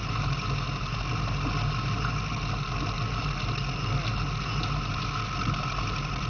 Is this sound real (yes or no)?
yes